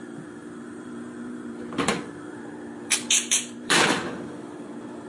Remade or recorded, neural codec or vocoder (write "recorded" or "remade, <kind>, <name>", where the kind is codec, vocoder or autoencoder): remade, vocoder, BigVGAN v2